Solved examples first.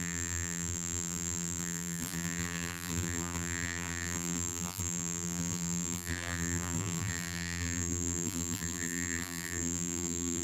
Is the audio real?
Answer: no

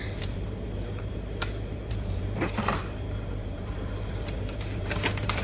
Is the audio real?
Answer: no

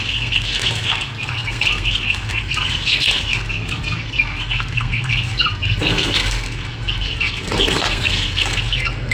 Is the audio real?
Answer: no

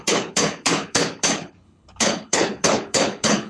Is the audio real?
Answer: no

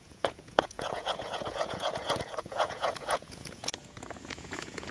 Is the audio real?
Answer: no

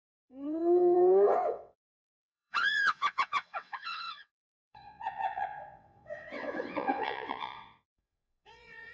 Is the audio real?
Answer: no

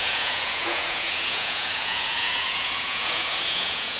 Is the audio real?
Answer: no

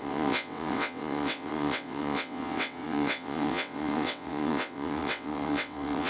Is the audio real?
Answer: no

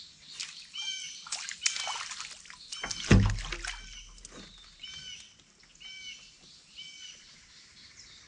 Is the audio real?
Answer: yes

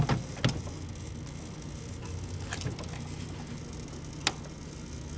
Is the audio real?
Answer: yes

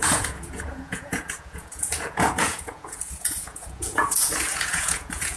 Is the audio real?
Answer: no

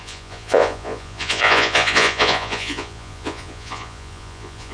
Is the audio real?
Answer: no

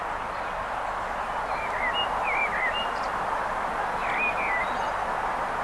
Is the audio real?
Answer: yes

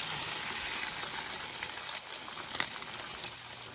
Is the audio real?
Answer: yes